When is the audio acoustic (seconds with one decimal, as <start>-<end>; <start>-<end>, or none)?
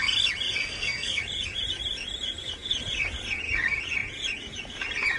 0.0-0.6; 1.2-5.2